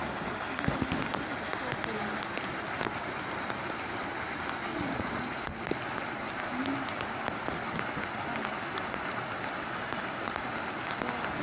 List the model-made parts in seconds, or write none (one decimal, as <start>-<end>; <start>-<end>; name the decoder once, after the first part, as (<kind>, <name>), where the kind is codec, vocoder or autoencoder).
4.7-5.7 (vocoder, Vocos)